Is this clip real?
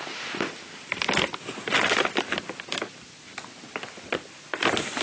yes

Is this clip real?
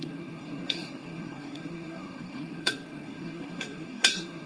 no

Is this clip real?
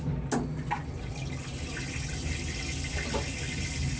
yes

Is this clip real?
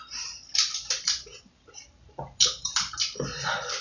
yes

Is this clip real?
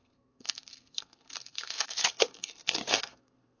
no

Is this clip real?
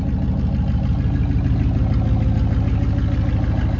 yes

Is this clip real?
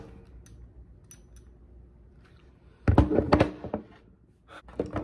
yes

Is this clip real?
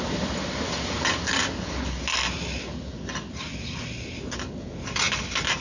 yes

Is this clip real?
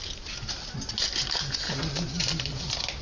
yes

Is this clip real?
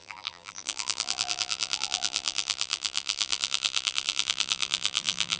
no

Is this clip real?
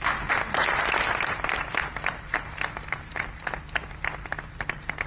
no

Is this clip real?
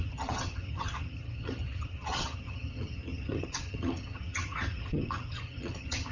no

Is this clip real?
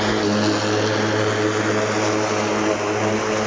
yes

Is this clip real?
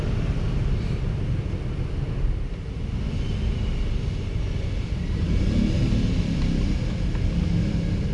yes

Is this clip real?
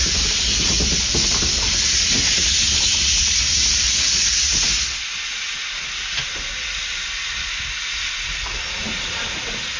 yes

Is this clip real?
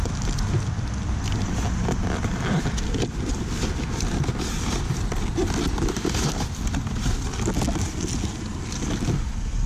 yes